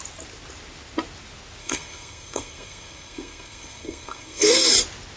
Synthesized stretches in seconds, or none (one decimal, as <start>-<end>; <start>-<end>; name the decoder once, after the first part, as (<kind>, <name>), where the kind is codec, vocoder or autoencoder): 1.6-4.7 (codec, SNAC)